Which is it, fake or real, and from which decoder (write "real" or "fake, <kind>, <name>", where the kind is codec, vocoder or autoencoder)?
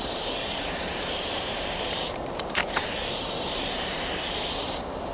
fake, vocoder, BigVGAN v2